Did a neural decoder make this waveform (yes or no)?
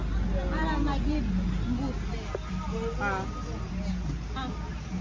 no